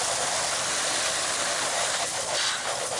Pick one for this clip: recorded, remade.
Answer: recorded